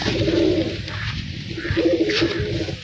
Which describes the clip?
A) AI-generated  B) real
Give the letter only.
B